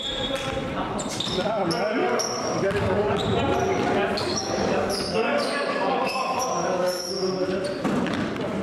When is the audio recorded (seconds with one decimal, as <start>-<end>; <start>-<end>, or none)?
0.0-2.0; 3.1-4.1; 7.1-8.6